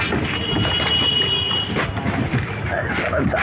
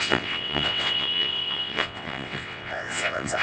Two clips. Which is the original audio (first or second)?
first